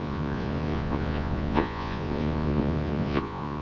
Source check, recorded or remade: remade